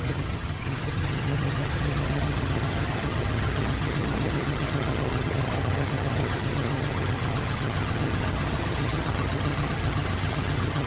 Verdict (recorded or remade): remade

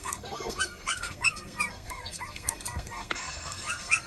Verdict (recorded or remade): remade